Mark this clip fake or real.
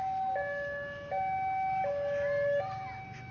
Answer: real